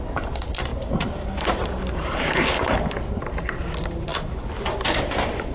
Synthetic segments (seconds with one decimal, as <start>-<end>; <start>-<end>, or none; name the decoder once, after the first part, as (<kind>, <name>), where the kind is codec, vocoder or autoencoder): 0.0-5.5 (vocoder, BigVGAN v2)